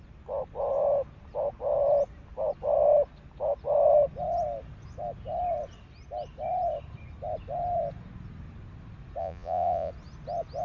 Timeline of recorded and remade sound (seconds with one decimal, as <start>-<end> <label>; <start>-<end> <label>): 0.0-9.2 recorded; 9.2-9.9 remade; 9.9-10.6 recorded